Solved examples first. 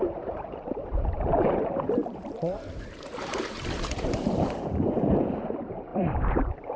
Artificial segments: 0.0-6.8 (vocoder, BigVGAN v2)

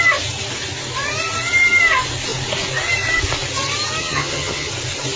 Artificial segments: 4.0-4.7 (vocoder, HiFi-GAN)